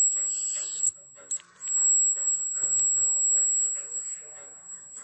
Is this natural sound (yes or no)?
yes